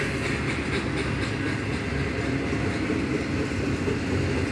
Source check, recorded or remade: recorded